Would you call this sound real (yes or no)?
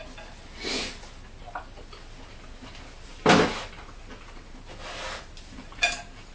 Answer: yes